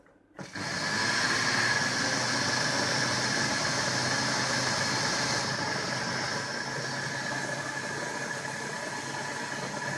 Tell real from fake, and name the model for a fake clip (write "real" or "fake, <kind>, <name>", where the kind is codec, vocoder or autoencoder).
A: real